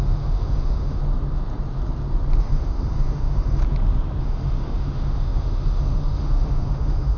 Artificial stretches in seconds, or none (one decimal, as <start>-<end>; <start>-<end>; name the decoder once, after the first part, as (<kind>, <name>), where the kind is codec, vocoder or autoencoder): 0.0-1.0 (autoencoder, DAC-VAE); 2.4-3.6; 4.2-7.2

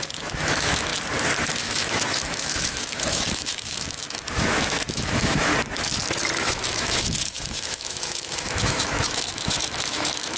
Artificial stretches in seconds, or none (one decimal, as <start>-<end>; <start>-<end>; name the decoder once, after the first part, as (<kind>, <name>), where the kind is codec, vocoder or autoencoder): 0.0-0.9 (autoencoder, DAC-VAE); 1.5-5.5; 6.4-10.4

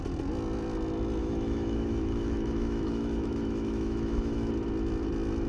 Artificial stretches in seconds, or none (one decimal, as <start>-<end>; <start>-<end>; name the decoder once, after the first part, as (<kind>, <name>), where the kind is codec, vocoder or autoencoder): 1.2-4.5 (autoencoder, DAC-VAE)

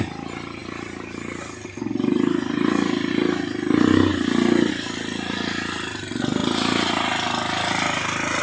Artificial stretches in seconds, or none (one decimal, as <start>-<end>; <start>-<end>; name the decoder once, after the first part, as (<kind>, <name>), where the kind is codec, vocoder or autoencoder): none

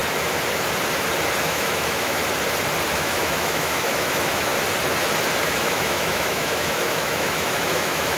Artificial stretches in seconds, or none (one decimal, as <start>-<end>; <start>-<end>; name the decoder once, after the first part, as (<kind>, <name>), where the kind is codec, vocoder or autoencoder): 1.4-2.2 (autoencoder, DAC-VAE); 2.9-4.5; 5.4-8.2

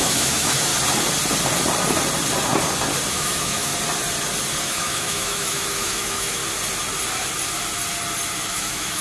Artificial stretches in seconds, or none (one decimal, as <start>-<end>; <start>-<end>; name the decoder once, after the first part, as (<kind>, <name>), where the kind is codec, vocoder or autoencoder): 0.0-0.7 (autoencoder, DAC-VAE); 3.1-3.7; 4.6-6.4; 8.3-9.0